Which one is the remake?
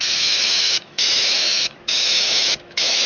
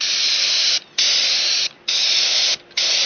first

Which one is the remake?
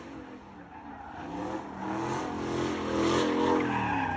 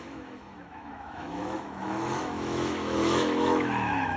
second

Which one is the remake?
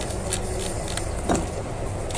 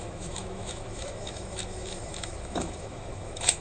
second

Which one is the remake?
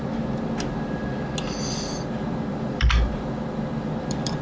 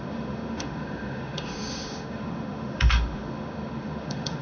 second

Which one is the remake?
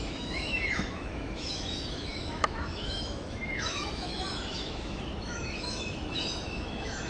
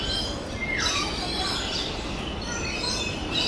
first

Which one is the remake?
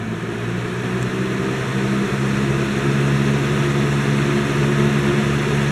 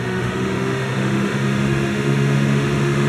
second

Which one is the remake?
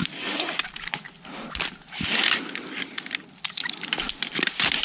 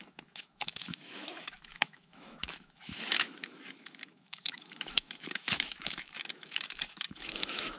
second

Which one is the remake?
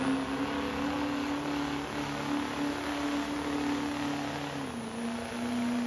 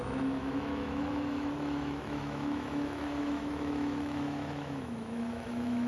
second